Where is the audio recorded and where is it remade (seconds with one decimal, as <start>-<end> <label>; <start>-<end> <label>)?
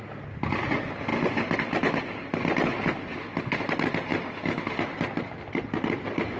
0.0-6.4 recorded